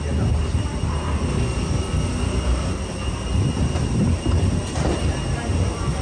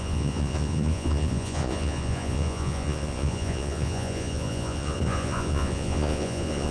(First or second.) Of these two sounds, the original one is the first